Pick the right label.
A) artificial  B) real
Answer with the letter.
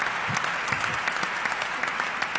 B